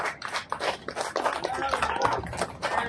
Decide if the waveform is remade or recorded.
recorded